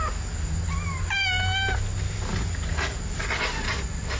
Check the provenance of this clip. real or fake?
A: real